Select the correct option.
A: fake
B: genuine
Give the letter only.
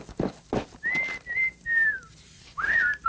B